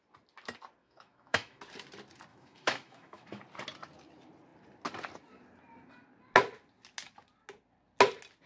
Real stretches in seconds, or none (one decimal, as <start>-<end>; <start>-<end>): 0.0-0.8; 1.6-2.3; 3.4-8.5